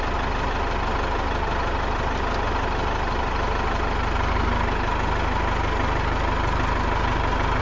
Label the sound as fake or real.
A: real